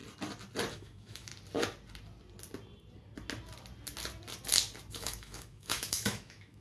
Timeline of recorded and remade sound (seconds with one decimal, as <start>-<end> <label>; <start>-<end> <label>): 0.0-0.7 recorded; 0.7-1.3 remade; 1.3-4.9 recorded; 4.9-6.6 remade